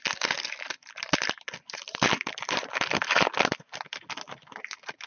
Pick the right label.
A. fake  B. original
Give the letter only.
B